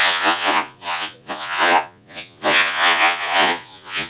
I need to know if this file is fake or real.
fake